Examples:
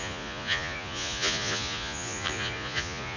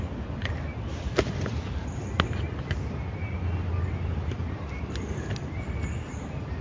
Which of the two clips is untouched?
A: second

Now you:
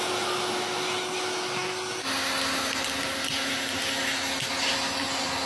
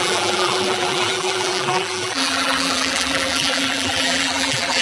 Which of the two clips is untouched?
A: first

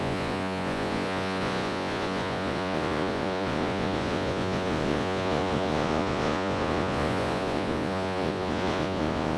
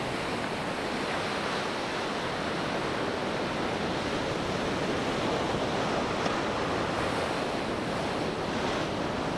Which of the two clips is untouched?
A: second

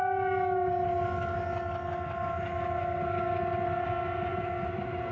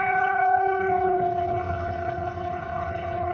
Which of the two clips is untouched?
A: first